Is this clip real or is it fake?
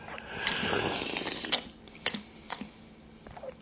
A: real